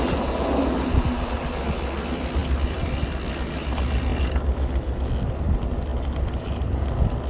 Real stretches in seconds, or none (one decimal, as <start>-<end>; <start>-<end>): 0.0-7.3